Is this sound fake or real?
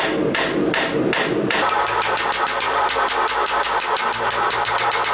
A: real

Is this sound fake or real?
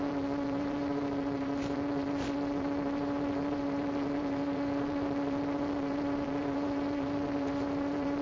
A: fake